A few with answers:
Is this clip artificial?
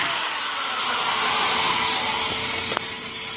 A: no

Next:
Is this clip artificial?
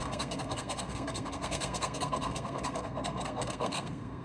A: yes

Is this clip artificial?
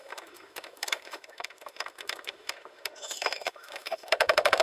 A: yes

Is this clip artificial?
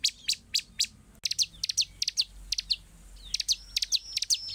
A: no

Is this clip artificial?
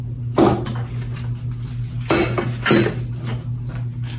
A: no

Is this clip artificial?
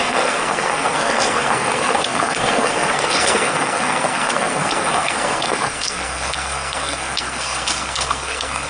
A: yes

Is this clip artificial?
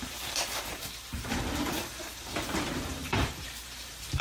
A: yes